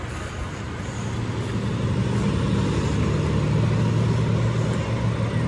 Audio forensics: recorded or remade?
recorded